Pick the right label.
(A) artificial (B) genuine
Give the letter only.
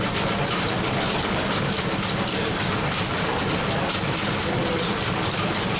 B